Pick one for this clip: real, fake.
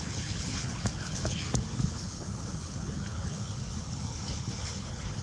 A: fake